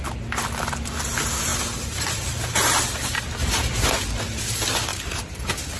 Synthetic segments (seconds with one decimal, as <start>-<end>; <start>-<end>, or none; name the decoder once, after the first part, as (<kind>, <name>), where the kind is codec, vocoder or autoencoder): 1.5-2.8 (vocoder, BigVGAN v2); 4.9-5.8